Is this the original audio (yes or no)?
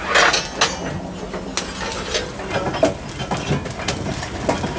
yes